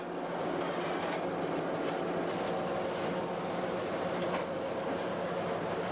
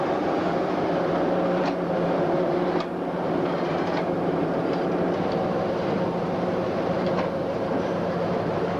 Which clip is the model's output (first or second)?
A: second